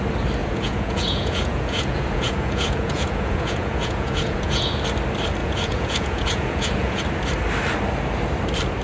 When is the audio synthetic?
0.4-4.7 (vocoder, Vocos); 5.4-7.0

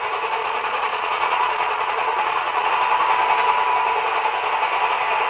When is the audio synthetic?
0.4-2.7 (vocoder, Vocos)

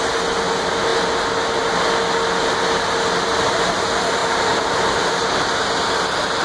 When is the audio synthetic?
none

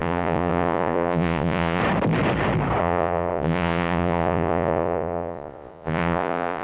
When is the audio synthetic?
0.0-1.8 (vocoder, Vocos); 2.8-6.6

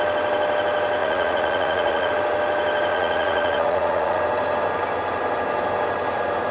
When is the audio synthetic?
1.0-2.1 (vocoder, Vocos); 2.9-4.2